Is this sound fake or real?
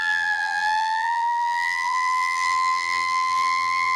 fake